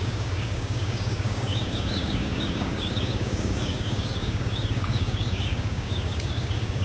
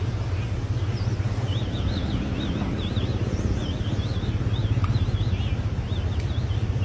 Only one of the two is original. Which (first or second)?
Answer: second